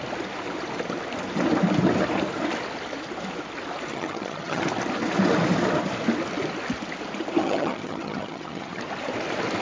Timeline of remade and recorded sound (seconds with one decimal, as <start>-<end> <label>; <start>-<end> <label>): 0.0-3.9 recorded; 3.9-4.6 remade; 4.6-7.4 recorded; 7.4-8.8 remade; 8.8-9.6 recorded